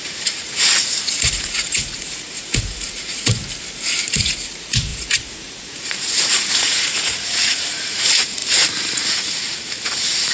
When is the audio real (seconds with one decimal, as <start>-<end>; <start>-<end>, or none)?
3.4-4.1